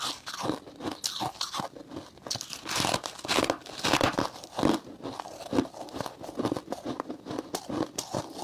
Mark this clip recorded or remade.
recorded